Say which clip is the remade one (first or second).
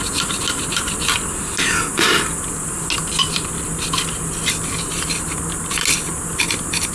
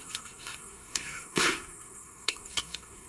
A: second